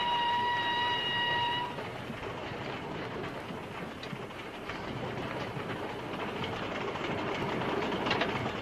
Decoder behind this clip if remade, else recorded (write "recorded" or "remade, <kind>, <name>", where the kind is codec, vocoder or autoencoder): recorded